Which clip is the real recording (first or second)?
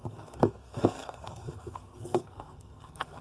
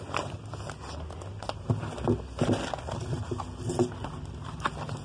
second